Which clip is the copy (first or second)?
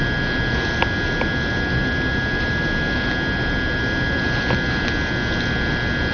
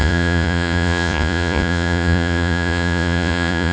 second